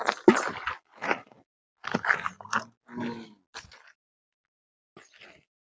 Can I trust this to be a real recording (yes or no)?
yes